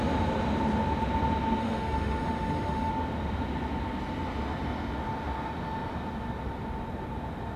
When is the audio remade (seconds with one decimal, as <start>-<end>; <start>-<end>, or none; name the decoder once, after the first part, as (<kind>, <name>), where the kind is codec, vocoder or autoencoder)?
1.6-2.9 (autoencoder, DAC-VAE)